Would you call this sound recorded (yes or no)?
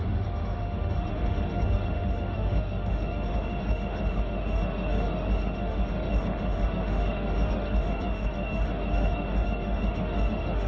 no